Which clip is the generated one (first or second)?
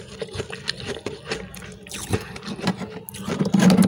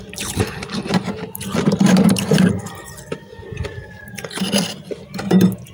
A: second